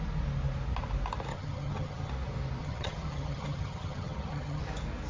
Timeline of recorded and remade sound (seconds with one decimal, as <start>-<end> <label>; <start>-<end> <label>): 0.0-1.3 recorded; 1.3-2.1 remade; 2.1-2.6 recorded; 2.6-4.6 remade; 4.6-5.1 recorded